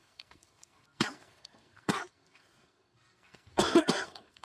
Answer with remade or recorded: remade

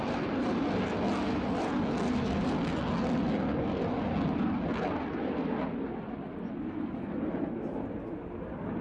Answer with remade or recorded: recorded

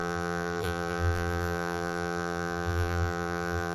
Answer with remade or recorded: remade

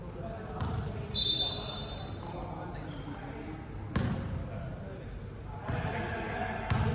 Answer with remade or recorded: recorded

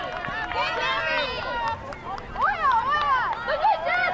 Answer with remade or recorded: recorded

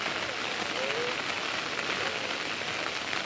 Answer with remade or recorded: recorded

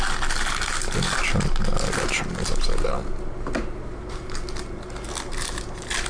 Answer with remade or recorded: recorded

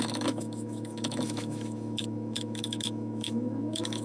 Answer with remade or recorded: remade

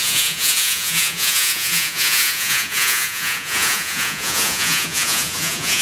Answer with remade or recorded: remade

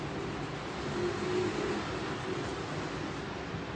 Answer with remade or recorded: recorded